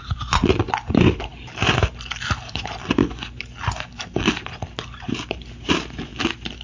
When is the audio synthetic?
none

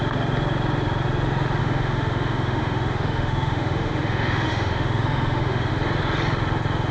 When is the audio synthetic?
1.6-5.7 (autoencoder, DAC-VAE)

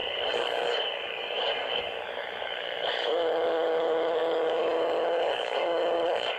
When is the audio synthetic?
0.0-6.4 (codec, DAC)

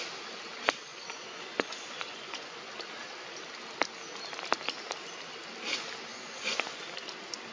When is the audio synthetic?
0.9-2.6 (vocoder, Vocos); 6.1-6.8

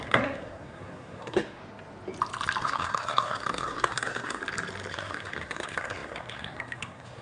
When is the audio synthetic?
0.0-1.6 (codec, SNAC); 2.6-4.4; 4.9-7.2